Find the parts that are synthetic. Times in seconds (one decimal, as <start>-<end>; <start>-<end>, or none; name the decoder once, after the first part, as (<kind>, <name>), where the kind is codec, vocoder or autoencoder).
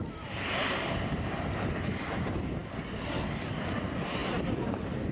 none